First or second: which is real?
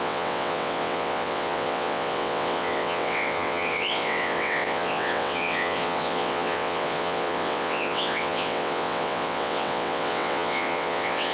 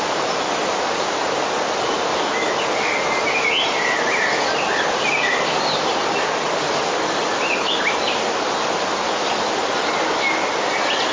second